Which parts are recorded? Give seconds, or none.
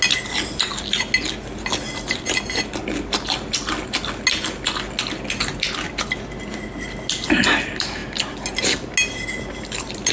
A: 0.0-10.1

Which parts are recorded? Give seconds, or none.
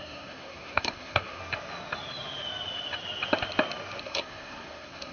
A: 1.4-4.0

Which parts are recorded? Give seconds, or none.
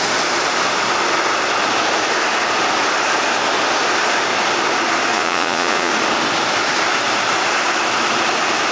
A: 0.0-5.1; 5.9-8.7